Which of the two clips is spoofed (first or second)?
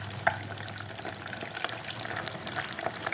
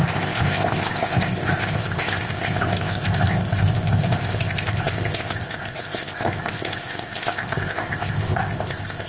second